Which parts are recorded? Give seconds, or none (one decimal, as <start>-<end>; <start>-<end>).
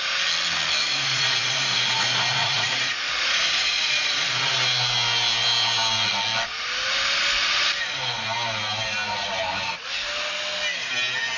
0.0-0.8; 4.5-11.4